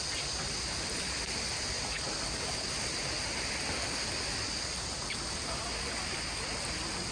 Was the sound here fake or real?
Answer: real